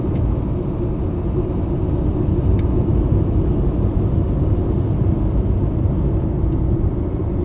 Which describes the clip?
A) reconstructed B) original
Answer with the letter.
B